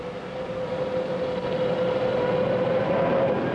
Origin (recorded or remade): recorded